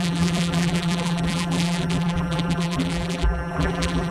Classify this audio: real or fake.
fake